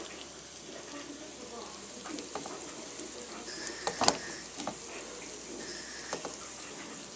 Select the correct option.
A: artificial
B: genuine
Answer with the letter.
B